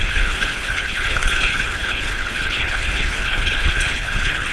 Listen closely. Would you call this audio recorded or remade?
remade